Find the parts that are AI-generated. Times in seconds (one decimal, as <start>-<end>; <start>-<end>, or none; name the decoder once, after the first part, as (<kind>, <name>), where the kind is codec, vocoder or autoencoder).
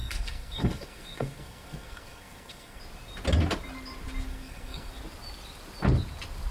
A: 0.0-2.8 (codec, SNAC); 4.3-4.9